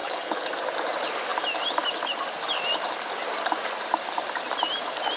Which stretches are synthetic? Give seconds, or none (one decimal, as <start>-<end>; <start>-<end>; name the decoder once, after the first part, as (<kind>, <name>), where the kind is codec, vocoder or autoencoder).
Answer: 0.0-0.5 (codec, HILCodec)